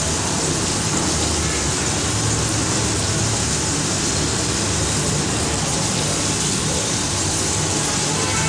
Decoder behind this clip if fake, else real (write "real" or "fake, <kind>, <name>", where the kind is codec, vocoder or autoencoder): real